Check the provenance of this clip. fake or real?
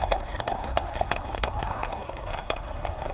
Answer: fake